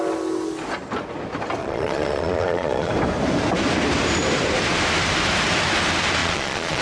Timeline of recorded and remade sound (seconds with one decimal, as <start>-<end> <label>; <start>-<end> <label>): 0.0-1.6 recorded; 1.6-2.9 remade; 2.9-6.2 recorded; 6.2-6.8 remade